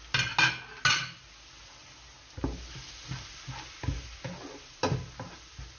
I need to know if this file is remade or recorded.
recorded